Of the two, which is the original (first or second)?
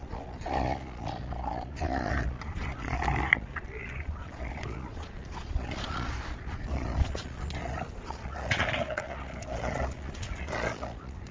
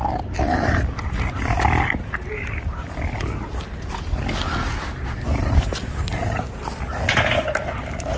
second